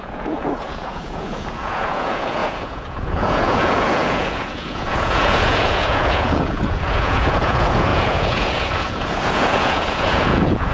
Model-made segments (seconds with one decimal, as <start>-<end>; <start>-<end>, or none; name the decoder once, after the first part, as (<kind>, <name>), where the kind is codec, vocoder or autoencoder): 0.0-10.7 (vocoder, Vocos)